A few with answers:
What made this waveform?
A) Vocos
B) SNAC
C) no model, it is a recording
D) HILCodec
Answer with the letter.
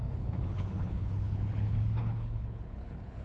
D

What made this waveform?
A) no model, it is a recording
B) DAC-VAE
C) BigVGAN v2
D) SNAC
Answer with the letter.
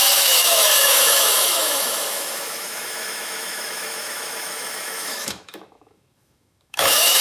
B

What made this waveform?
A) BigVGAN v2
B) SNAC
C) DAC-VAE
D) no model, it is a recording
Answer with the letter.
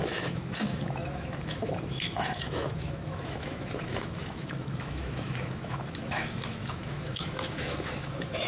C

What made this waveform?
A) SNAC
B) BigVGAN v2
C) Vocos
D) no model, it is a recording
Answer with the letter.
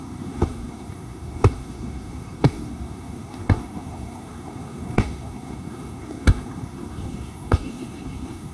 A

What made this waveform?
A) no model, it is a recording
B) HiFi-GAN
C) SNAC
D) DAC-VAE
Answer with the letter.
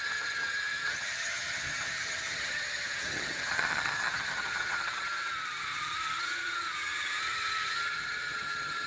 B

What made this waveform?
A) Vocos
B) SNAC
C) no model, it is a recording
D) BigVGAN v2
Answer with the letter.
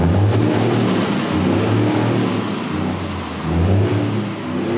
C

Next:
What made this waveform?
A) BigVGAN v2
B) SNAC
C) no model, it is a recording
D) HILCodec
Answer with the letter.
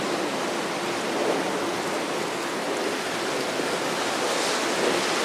C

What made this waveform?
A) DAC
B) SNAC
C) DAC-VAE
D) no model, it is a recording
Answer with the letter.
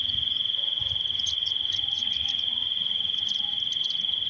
D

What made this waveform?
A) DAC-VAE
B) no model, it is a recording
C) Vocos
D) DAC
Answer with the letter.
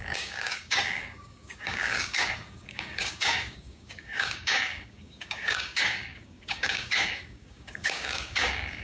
D